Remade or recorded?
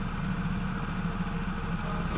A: recorded